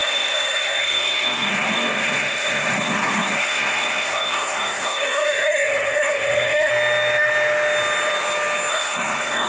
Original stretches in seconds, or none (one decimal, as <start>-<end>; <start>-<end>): 6.7-8.7